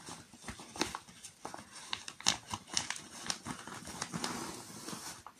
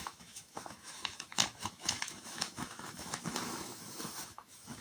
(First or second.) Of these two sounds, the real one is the first